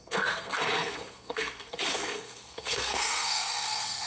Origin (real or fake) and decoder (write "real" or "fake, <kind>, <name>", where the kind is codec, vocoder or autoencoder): fake, codec, SNAC